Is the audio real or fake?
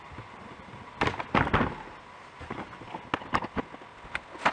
real